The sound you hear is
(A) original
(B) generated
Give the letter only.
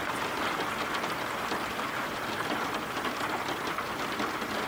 A